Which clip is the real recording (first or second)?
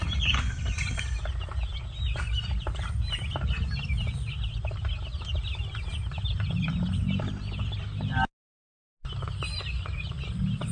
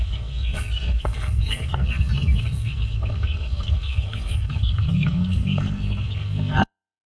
first